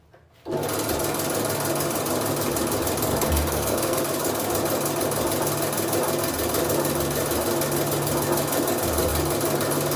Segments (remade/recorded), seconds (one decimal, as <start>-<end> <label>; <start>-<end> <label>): 0.0-3.1 recorded; 3.1-4.0 remade; 4.0-10.0 recorded